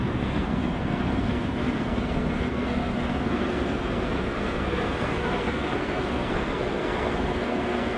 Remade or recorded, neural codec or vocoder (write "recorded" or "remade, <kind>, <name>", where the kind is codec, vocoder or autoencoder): remade, codec, SNAC